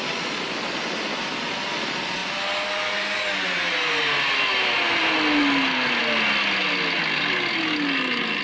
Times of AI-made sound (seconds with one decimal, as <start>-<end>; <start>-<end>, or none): none